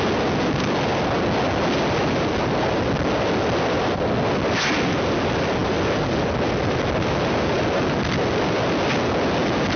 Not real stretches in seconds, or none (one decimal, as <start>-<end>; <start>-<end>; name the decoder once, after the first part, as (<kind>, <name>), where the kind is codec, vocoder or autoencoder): none